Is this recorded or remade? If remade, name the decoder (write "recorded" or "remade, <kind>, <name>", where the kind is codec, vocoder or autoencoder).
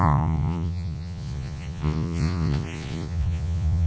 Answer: remade, vocoder, Vocos